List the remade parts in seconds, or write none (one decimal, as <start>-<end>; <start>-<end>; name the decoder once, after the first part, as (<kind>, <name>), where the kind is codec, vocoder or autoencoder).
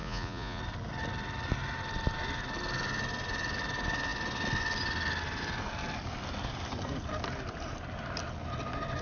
0.0-0.6 (vocoder, Vocos)